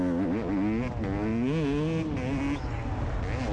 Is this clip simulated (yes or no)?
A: no